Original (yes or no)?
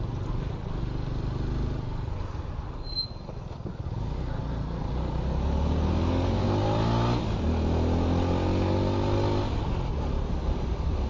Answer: yes